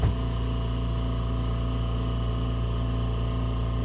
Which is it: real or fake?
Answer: real